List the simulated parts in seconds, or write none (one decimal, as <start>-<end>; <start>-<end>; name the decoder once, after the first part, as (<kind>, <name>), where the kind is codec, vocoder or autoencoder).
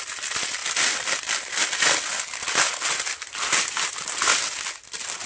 0.6-1.2 (vocoder, BigVGAN v2); 2.1-5.3